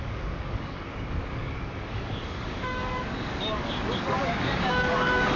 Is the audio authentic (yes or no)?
no